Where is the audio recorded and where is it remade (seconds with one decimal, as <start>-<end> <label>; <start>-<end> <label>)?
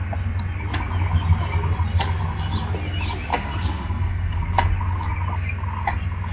0.0-3.3 recorded; 3.3-4.7 remade; 4.7-6.3 recorded